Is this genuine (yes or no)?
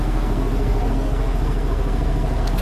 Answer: no